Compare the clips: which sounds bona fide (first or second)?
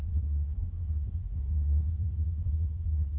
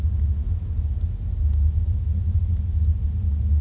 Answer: second